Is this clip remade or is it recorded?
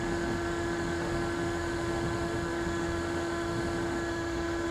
remade